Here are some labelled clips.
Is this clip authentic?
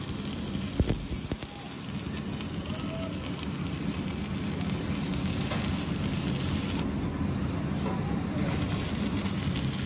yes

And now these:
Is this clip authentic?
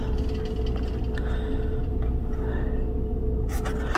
yes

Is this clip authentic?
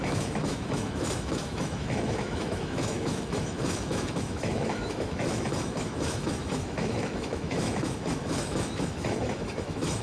no